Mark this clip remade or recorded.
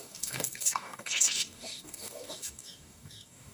remade